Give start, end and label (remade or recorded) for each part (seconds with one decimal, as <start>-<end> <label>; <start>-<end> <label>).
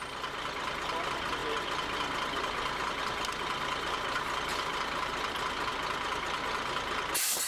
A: 0.0-7.5 recorded